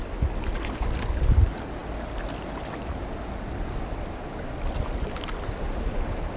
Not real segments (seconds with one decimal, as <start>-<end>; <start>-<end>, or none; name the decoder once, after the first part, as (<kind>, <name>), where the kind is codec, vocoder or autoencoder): none